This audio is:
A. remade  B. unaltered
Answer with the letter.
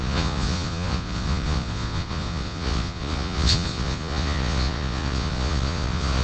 A